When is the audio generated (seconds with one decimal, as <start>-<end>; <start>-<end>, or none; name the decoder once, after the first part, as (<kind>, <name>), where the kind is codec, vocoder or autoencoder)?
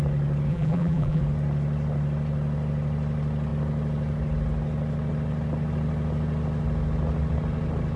0.5-1.2 (vocoder, BigVGAN v2)